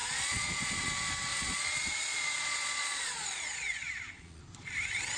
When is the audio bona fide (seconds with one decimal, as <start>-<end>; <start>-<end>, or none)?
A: 0.9-1.3; 4.4-5.2